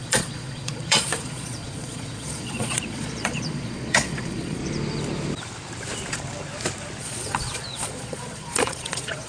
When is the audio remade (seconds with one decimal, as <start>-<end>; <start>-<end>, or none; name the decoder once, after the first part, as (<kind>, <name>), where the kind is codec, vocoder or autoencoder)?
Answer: 0.0-4.6 (vocoder, Vocos); 7.0-9.3